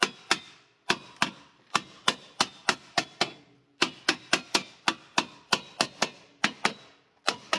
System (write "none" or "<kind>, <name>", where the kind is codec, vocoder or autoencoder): vocoder, BigVGAN v2